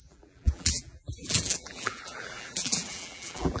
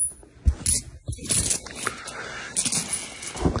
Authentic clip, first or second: second